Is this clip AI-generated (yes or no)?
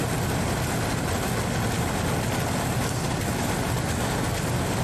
no